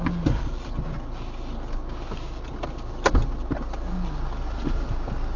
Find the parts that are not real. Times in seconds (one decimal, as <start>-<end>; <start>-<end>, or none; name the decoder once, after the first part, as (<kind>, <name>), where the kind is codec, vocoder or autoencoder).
none